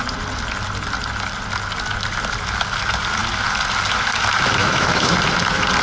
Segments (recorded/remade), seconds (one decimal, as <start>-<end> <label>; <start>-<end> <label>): 0.0-4.6 recorded; 4.6-5.1 remade; 5.1-5.8 recorded